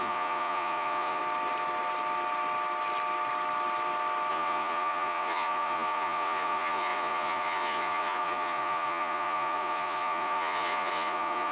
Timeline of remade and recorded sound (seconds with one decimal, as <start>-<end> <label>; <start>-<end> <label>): 0.0-1.2 remade; 1.2-4.3 recorded; 4.3-11.5 remade